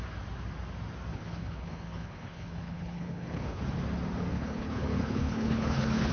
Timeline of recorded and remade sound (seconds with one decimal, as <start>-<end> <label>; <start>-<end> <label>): 0.0-1.1 recorded; 1.1-3.6 remade; 3.6-4.3 recorded; 4.3-6.1 remade